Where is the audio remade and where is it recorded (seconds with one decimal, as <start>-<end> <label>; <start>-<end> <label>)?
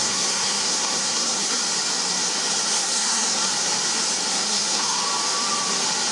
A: 0.0-1.6 remade; 1.6-2.7 recorded; 2.7-3.5 remade; 3.5-4.3 recorded; 4.3-5.0 remade; 5.0-6.1 recorded